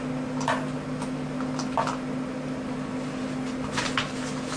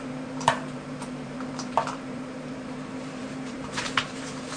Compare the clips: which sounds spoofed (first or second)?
second